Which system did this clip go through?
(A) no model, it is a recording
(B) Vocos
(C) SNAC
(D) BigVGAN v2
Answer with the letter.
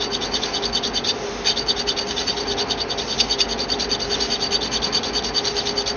A